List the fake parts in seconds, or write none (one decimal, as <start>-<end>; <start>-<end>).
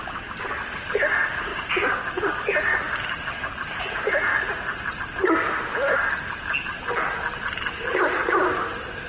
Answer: 1.5-2.3